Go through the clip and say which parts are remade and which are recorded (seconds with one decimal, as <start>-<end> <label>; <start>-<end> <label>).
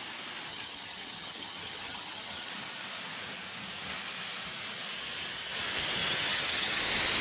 0.0-0.5 recorded; 0.5-2.5 remade; 2.5-6.0 recorded; 6.0-6.8 remade; 6.8-7.2 recorded